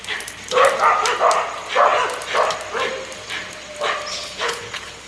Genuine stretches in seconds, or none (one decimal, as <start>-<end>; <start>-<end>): 0.0-4.1